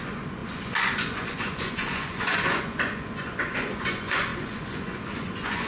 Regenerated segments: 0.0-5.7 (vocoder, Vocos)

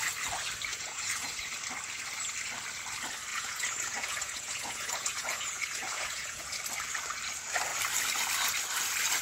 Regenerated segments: 0.7-1.5 (vocoder, Vocos); 3.3-6.6

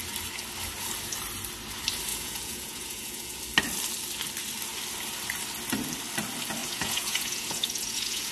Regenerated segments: 2.1-3.4 (vocoder, Vocos); 6.6-8.3

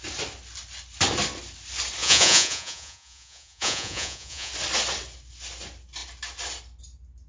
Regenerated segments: 2.0-4.5 (vocoder, Vocos)

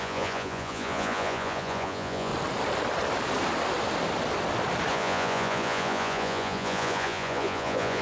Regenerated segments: 0.0-2.3 (vocoder, Vocos); 4.9-8.0